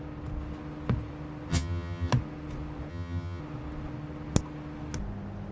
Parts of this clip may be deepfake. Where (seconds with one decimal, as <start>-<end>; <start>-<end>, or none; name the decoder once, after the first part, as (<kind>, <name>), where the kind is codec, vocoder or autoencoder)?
1.5-2.1 (vocoder, HiFi-GAN); 2.9-3.4